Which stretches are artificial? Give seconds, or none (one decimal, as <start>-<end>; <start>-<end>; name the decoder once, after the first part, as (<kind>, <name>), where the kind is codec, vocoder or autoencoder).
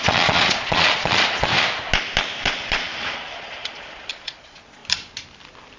0.0-1.5 (vocoder, Vocos); 2.4-4.8